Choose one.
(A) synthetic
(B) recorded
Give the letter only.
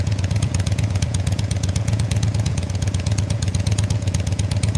A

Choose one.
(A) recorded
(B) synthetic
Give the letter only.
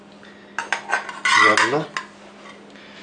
A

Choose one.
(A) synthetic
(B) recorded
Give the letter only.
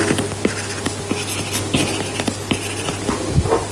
B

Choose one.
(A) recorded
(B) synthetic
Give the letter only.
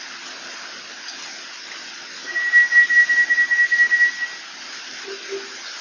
A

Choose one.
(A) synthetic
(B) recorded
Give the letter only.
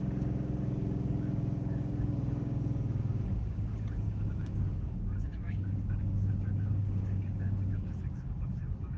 A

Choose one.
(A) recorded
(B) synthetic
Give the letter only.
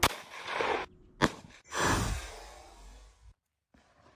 A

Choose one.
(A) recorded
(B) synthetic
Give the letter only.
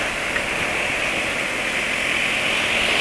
A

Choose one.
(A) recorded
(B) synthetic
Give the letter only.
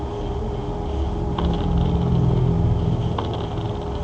A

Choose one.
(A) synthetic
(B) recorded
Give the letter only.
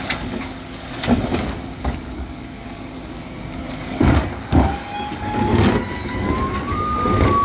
A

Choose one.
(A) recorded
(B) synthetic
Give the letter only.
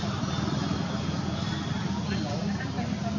A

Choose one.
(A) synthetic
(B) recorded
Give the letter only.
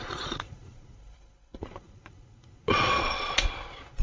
A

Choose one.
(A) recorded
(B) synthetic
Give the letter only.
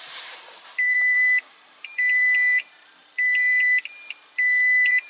B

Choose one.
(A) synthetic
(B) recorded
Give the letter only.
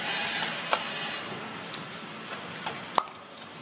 B